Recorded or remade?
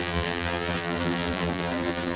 remade